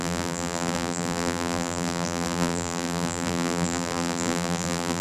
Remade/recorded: remade